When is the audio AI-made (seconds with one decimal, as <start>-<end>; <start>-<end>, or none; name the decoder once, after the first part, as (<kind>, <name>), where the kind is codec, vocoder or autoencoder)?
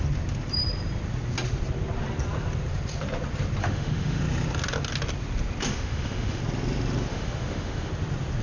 3.6-4.2 (autoencoder, DAC-VAE); 5.7-6.4; 7.1-7.9